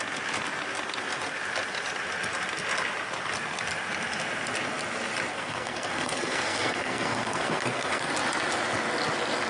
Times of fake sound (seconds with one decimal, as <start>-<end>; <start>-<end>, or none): 5.3-8.1